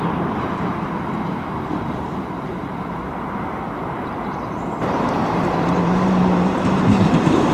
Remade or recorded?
remade